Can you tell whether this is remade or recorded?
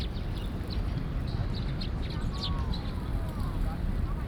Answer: recorded